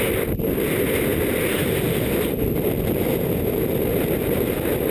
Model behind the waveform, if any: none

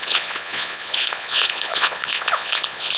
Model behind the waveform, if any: vocoder, Vocos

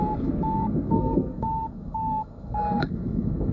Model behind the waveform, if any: codec, SNAC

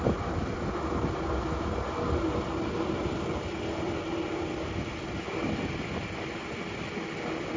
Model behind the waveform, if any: none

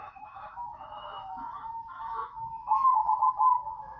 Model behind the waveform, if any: autoencoder, DAC-VAE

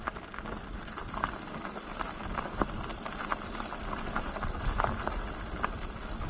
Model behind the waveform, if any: none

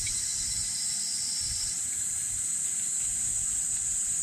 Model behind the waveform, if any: none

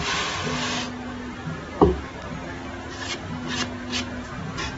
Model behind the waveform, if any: none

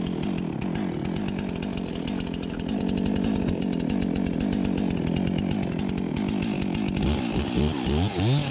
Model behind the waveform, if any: none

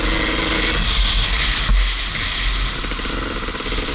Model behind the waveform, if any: none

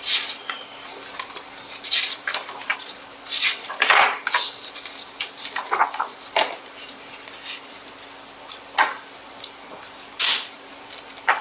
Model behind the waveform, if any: vocoder, BigVGAN v2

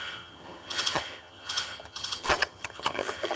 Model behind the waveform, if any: vocoder, HiFi-GAN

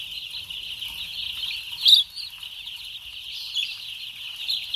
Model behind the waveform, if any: none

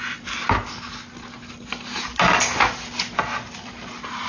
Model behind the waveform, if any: none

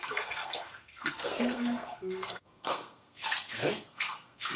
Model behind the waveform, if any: codec, SNAC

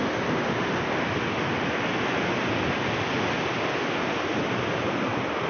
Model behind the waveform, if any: none